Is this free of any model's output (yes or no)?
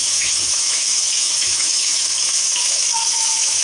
no